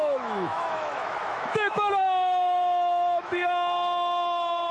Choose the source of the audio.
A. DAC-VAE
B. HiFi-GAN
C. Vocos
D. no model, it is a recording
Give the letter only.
A